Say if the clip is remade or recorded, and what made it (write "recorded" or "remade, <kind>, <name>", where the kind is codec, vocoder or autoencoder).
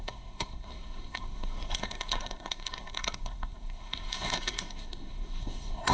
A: remade, codec, SNAC